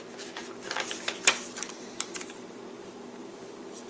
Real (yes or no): yes